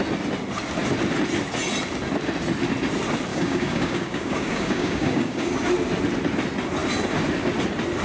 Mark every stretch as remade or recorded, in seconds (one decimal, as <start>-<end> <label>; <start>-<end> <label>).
0.0-3.3 recorded; 3.3-5.5 remade; 5.5-8.0 recorded